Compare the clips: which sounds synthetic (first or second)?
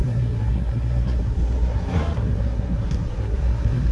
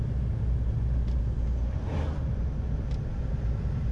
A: first